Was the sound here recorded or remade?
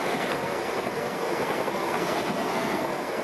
remade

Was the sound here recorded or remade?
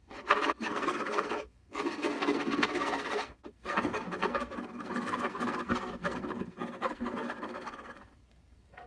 remade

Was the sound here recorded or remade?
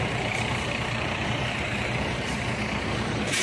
remade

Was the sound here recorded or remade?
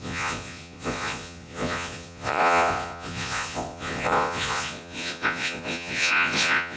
remade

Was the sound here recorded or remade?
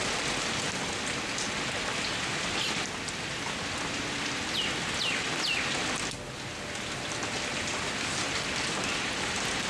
recorded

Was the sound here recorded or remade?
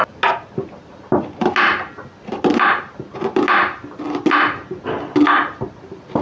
recorded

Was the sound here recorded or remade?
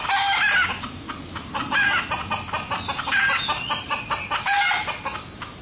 recorded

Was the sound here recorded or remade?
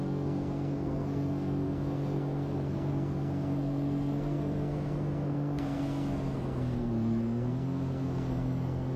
remade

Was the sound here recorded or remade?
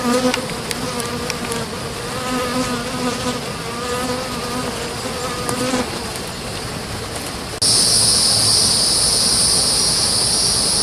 recorded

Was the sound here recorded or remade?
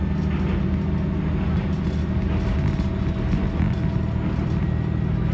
recorded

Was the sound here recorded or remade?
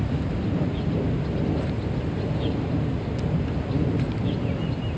recorded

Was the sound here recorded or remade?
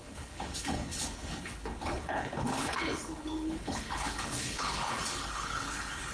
remade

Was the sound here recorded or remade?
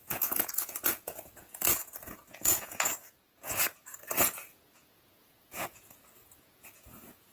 remade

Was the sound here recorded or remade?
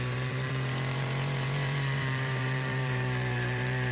remade